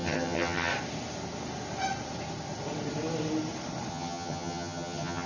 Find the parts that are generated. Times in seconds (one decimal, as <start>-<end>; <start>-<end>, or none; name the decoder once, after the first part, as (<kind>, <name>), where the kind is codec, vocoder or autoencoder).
0.0-0.7 (vocoder, HiFi-GAN); 3.9-5.3